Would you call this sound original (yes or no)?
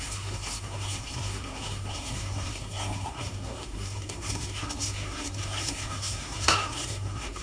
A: no